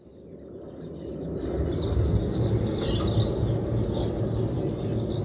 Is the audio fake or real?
real